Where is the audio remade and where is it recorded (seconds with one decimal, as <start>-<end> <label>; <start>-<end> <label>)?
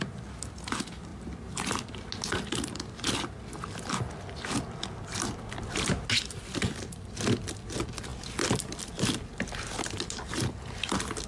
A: 0.0-11.3 recorded